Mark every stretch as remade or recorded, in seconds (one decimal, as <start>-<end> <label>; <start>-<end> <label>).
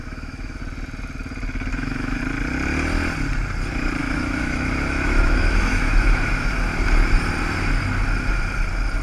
0.0-0.6 remade; 0.6-1.7 recorded; 1.7-2.2 remade; 2.2-4.0 recorded; 4.0-6.5 remade; 6.5-9.0 recorded